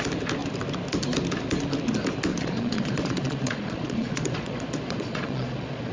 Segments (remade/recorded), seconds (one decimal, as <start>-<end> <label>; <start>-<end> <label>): 0.0-2.3 recorded; 2.3-5.9 remade